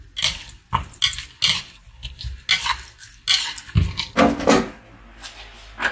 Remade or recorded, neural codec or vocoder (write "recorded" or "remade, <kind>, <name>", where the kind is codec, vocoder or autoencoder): recorded